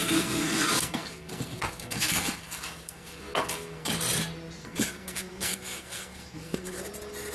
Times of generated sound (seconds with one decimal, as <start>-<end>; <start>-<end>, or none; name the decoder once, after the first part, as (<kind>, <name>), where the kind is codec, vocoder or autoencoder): 0.0-3.9 (codec, SNAC); 4.6-6.8